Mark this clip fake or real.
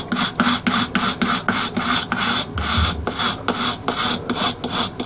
real